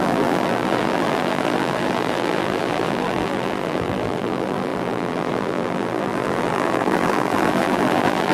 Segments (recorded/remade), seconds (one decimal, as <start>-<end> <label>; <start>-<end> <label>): 0.0-8.3 remade